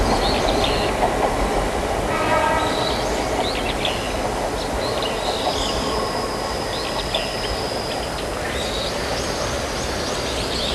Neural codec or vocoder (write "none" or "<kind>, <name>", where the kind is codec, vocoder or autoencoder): none